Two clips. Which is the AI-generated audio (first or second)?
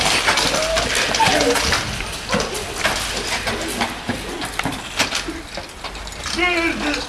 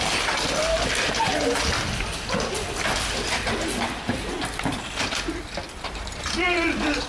second